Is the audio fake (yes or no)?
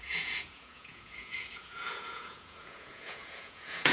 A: yes